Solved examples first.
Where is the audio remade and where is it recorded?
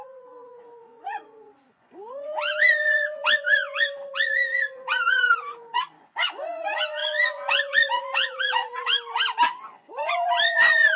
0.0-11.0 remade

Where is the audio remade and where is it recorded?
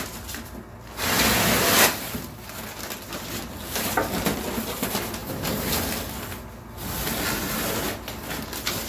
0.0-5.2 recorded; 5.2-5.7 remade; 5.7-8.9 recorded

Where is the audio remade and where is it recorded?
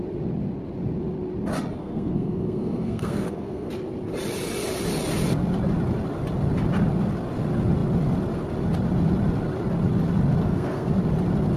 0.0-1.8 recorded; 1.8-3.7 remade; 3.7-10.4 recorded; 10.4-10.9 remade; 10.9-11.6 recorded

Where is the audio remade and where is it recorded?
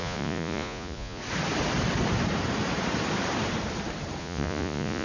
0.0-1.2 remade; 1.2-4.2 recorded; 4.2-5.0 remade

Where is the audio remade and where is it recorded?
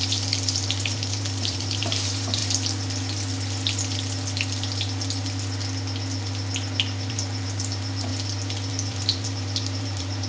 0.0-2.4 remade; 2.4-7.1 recorded; 7.1-8.1 remade; 8.1-8.7 recorded; 8.7-10.3 remade